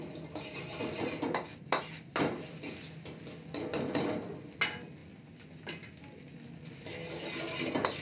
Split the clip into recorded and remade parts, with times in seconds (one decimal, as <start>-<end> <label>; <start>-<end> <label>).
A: 0.0-8.0 recorded